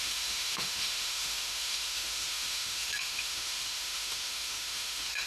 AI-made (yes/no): yes